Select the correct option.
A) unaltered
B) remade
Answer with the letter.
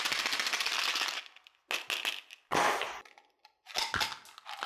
A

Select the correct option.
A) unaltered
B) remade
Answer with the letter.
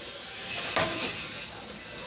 A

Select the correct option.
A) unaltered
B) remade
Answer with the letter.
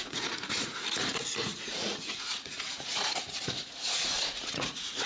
B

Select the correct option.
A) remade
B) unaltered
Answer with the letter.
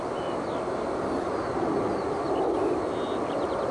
B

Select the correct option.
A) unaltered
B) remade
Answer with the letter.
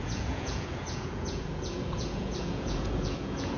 B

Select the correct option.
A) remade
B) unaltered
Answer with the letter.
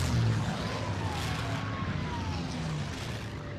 B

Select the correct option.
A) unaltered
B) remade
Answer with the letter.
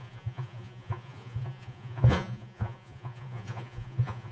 B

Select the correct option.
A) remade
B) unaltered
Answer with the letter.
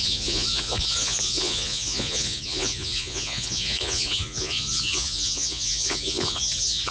A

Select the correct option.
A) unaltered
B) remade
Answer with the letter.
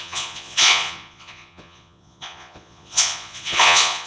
B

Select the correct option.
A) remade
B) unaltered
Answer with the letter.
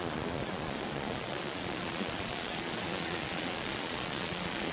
A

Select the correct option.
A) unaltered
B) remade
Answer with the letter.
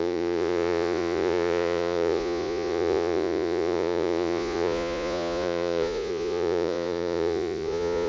B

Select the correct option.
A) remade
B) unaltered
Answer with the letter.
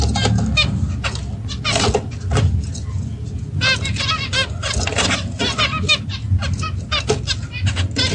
B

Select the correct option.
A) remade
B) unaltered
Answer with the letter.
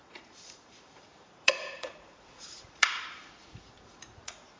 A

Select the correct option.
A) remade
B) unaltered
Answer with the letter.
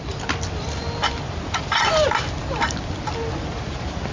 B